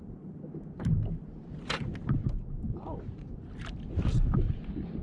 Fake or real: real